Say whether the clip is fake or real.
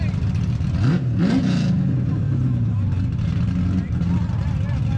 real